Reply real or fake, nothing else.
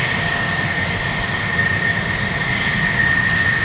real